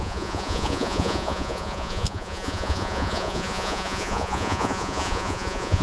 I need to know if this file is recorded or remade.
remade